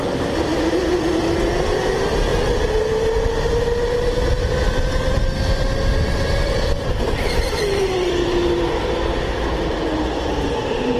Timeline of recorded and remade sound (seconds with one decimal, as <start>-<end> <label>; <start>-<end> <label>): 0.0-2.3 remade; 2.3-5.8 recorded; 5.8-11.0 remade